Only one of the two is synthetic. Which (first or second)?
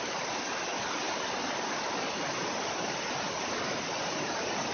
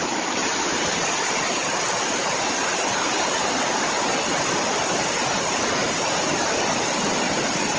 second